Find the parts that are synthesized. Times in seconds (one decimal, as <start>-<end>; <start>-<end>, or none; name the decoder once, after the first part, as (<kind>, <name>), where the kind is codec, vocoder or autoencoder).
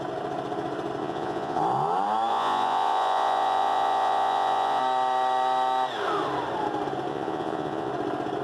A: 1.0-1.6 (vocoder, Vocos); 2.3-4.8; 7.1-7.9